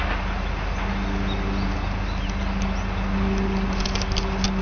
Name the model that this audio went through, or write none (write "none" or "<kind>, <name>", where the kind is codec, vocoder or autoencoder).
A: none